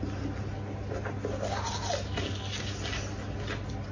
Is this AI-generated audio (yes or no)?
no